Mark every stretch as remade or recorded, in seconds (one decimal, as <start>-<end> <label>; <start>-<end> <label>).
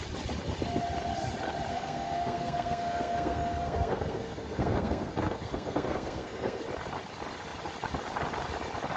0.0-1.7 recorded; 1.7-6.6 remade; 6.6-9.0 recorded